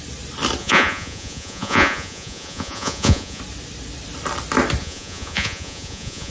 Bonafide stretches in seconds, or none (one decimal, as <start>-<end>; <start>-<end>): 0.0-0.6; 3.4-4.8